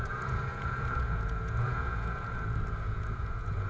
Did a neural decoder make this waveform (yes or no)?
yes